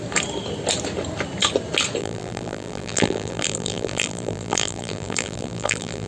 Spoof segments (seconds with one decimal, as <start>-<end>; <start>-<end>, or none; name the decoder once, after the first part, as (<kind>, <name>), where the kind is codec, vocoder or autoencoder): 2.0-6.1 (vocoder, BigVGAN v2)